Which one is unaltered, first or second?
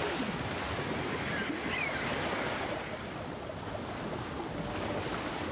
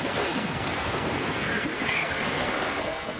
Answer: first